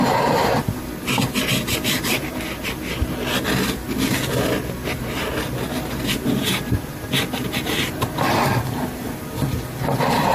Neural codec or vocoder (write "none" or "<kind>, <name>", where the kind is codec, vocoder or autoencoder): none